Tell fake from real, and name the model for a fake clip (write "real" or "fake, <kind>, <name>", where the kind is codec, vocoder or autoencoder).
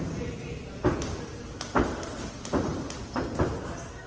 real